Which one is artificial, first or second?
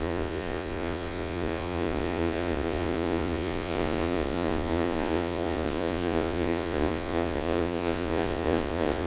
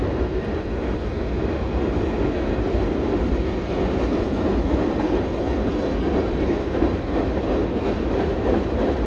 first